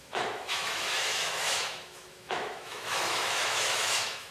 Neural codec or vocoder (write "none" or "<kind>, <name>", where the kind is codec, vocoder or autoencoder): autoencoder, DAC-VAE